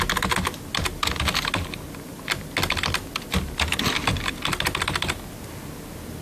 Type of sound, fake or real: real